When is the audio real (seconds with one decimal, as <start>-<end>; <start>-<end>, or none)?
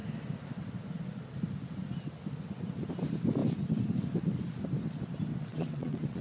0.0-5.5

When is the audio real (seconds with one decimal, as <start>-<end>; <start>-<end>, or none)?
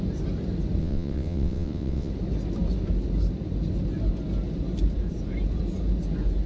0.0-0.8; 2.1-6.5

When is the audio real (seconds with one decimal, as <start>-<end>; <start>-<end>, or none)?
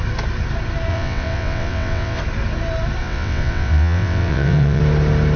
0.0-0.9; 2.2-3.0; 4.8-5.4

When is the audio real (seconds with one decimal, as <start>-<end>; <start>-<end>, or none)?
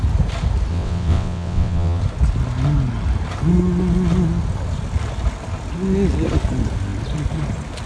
0.0-0.7; 2.0-7.9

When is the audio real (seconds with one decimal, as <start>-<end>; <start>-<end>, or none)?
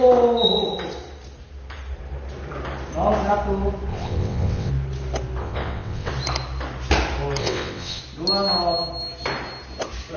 0.0-3.9; 4.7-5.4; 6.1-7.4; 8.0-10.2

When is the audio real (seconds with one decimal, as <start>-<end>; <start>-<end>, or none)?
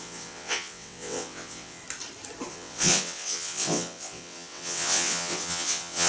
1.8-2.5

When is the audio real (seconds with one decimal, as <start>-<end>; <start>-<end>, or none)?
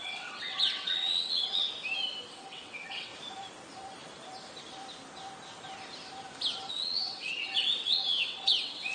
1.7-2.3; 3.1-6.7